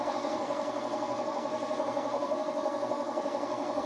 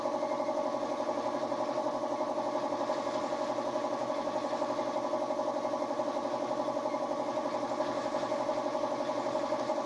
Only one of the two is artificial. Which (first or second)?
first